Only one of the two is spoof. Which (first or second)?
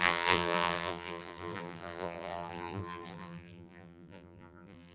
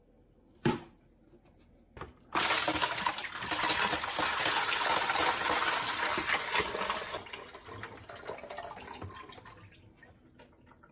first